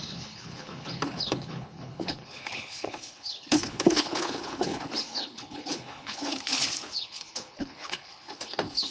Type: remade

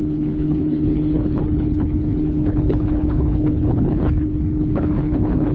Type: remade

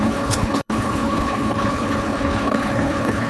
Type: remade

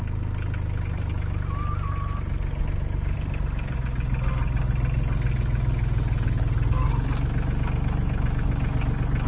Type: recorded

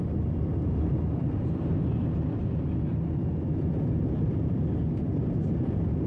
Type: recorded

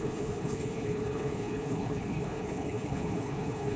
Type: remade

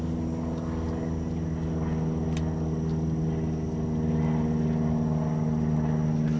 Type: recorded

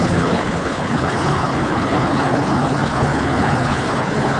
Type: remade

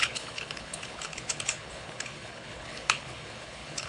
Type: remade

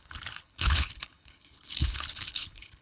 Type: remade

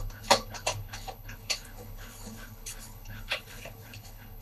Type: remade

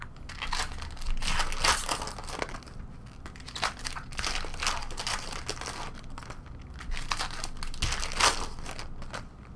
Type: recorded